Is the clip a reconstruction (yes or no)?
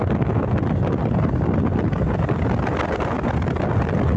no